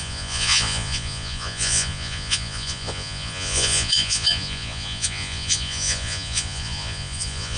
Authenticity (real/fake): fake